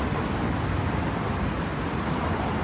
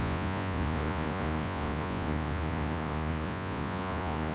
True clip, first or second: first